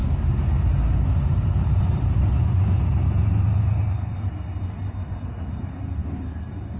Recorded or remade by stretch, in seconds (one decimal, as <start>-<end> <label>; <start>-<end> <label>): 0.0-6.8 recorded